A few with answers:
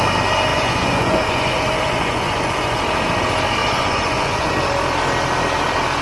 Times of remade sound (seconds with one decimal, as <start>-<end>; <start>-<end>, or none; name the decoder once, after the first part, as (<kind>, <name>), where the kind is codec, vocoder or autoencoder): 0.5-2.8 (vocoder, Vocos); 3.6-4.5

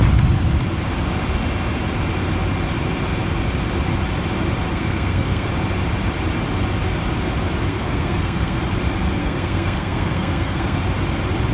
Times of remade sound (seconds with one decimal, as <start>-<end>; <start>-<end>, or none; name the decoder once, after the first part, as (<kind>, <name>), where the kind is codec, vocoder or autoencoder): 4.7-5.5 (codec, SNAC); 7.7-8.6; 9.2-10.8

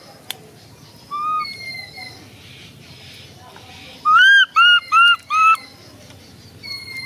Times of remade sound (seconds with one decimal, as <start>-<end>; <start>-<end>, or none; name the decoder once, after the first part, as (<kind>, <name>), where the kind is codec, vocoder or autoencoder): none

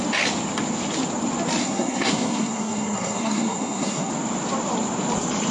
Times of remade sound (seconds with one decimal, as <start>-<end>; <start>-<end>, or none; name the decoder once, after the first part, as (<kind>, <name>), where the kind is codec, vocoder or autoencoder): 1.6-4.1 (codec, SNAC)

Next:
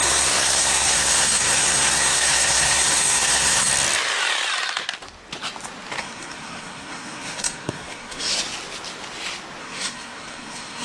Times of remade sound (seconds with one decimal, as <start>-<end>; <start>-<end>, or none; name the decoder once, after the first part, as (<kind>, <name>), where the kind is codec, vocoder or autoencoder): 0.0-3.7 (codec, SNAC); 6.0-8.3; 9.6-10.8